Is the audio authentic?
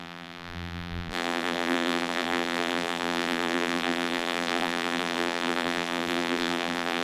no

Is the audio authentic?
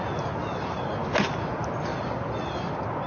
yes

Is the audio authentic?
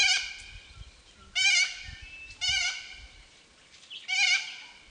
yes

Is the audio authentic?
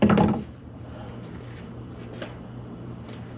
no